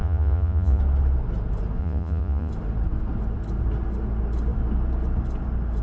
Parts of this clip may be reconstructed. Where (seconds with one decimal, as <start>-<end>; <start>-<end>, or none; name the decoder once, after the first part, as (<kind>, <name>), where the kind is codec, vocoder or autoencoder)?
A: 0.0-0.8 (vocoder, Vocos); 1.8-2.5